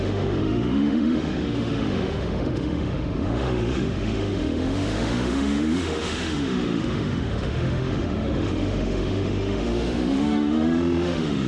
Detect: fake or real fake